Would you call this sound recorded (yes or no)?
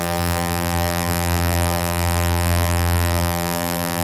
no